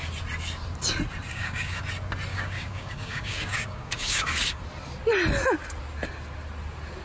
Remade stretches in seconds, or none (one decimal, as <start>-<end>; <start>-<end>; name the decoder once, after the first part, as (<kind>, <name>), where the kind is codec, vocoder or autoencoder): 1.3-1.8 (codec, DAC); 2.3-4.6